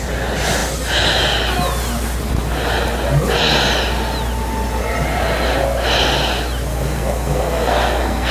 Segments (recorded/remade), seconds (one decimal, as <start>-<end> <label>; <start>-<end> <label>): 0.0-6.7 recorded; 6.7-8.3 remade